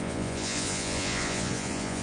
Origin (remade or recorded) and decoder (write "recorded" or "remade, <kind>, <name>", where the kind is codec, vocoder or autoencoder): remade, vocoder, Vocos